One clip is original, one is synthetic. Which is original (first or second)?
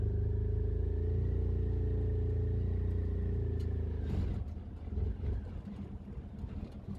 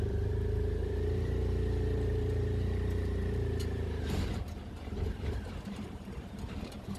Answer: first